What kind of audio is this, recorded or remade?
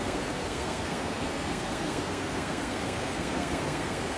remade